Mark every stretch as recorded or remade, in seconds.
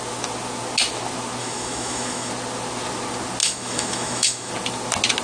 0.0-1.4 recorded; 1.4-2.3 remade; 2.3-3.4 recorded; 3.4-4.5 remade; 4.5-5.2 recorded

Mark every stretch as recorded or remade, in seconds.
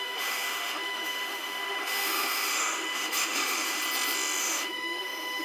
0.0-3.8 remade; 3.8-4.4 recorded; 4.4-5.4 remade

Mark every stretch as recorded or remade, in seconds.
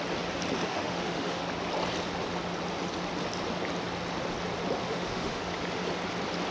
0.0-0.7 recorded; 0.7-1.4 remade; 1.4-4.8 recorded; 4.8-5.4 remade; 5.4-6.5 recorded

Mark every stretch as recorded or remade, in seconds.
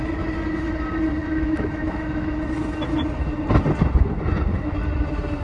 0.0-1.2 recorded; 1.2-2.4 remade; 2.4-5.4 recorded